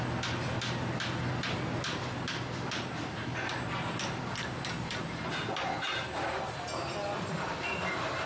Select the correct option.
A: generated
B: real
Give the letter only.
B